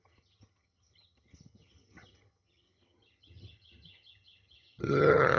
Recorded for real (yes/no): no